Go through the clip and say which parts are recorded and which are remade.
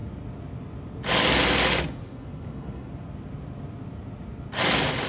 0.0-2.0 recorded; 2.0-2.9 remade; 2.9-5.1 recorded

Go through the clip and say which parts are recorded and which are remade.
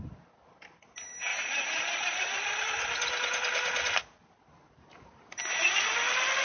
0.0-6.4 recorded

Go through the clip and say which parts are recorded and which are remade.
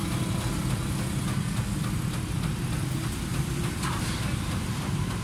0.0-5.2 recorded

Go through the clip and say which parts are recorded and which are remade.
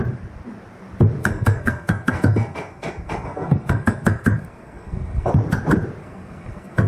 0.0-1.2 recorded; 1.2-5.3 remade; 5.3-6.0 recorded; 6.0-6.9 remade